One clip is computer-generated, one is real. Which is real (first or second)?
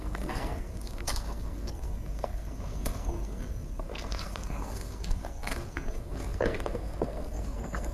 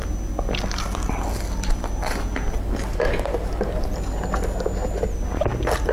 second